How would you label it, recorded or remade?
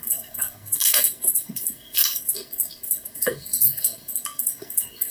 remade